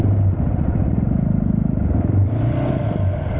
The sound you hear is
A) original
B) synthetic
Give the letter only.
A